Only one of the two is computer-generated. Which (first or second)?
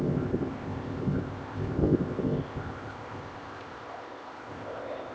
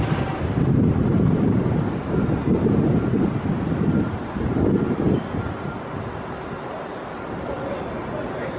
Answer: first